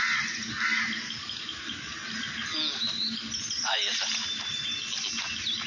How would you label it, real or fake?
real